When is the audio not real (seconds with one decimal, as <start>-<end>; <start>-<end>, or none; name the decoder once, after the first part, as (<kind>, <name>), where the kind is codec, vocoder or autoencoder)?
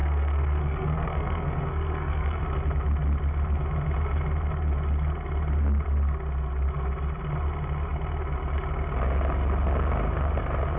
0.0-2.4 (codec, SNAC)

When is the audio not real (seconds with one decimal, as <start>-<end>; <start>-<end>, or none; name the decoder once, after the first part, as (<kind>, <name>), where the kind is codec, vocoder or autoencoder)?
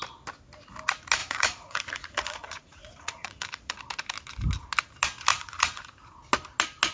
1.2-3.8 (vocoder, Vocos); 5.3-5.8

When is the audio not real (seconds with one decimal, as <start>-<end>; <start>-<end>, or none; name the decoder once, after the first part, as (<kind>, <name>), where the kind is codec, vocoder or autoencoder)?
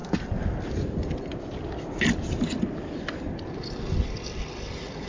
none